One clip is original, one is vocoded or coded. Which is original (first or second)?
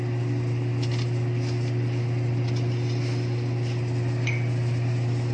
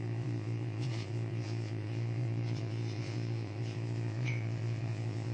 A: first